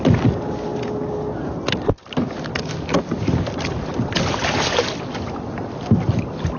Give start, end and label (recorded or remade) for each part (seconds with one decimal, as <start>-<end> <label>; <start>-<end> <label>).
0.0-6.6 recorded